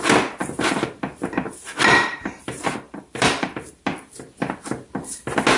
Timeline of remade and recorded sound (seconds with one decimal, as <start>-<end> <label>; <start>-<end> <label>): 0.0-0.4 recorded; 0.4-3.8 remade; 3.8-5.6 recorded